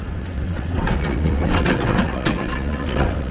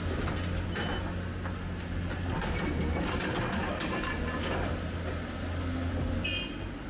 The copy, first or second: first